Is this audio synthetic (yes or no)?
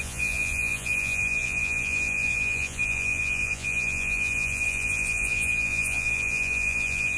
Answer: yes